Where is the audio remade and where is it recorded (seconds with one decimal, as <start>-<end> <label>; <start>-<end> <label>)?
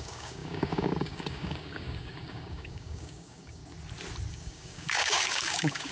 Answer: 0.0-3.6 remade; 3.6-4.3 recorded; 4.3-5.9 remade